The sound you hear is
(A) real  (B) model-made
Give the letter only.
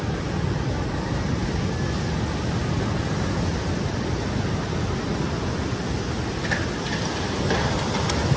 A